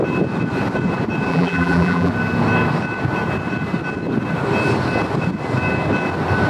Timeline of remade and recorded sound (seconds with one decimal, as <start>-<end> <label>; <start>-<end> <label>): 0.0-1.3 recorded; 1.3-2.1 remade; 2.1-6.5 recorded